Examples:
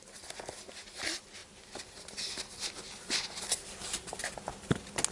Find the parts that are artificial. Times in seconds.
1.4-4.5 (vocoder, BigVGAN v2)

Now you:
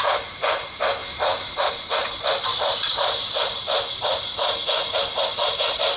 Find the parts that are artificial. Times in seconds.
1.0-1.6 (vocoder, BigVGAN v2); 2.0-4.4; 5.3-6.0

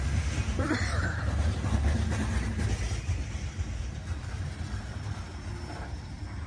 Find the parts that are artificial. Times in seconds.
0.0-2.5 (vocoder, BigVGAN v2); 3.8-5.2; 6.0-6.5

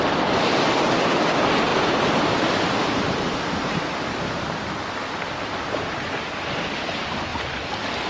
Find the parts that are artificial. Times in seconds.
none

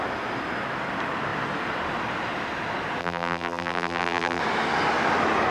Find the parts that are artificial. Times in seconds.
3.0-4.4 (vocoder, BigVGAN v2)